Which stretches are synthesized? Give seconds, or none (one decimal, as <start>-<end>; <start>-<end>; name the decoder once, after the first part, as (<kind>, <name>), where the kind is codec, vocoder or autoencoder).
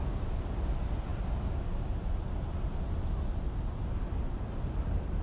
none